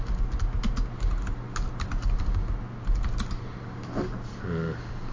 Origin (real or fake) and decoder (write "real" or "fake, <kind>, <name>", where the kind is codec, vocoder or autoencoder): real